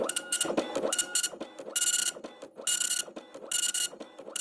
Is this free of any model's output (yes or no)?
yes